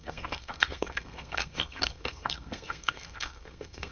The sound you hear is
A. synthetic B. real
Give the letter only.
A